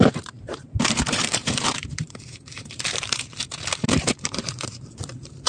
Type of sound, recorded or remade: remade